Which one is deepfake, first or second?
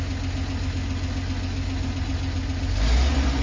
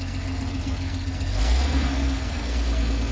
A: second